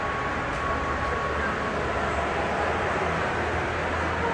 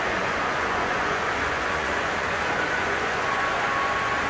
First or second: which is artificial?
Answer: second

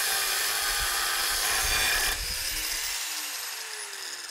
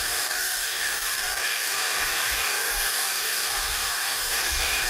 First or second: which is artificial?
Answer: second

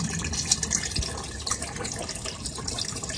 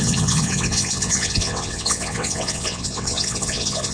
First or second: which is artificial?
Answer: second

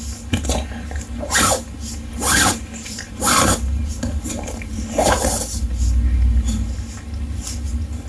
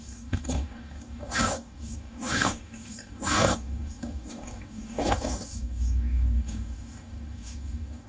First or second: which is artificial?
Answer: second